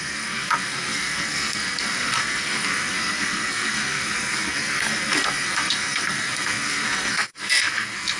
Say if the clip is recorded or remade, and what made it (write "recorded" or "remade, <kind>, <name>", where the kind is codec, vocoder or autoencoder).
remade, codec, SNAC